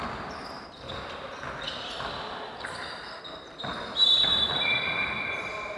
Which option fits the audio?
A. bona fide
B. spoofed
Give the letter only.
A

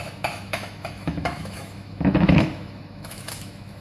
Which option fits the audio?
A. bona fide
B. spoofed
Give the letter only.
B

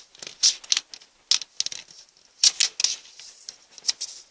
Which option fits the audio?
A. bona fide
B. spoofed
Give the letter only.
A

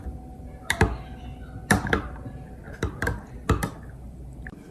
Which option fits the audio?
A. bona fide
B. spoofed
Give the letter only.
A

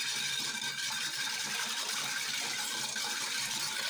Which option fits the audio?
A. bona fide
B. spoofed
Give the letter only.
A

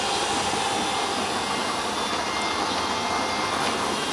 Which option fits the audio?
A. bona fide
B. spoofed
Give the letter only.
A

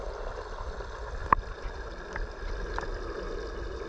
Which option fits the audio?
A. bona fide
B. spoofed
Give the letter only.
A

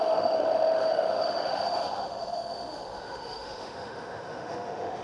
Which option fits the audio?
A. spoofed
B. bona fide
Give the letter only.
A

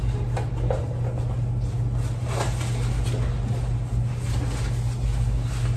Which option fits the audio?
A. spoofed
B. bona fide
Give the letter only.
B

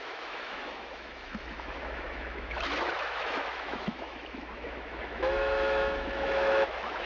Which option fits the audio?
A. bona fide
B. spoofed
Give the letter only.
B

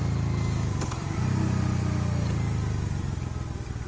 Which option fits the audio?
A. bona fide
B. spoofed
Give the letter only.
A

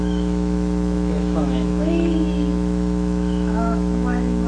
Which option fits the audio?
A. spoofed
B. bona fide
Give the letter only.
A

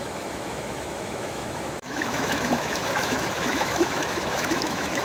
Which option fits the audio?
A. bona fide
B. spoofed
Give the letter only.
B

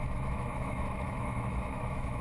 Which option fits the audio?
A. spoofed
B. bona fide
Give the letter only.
A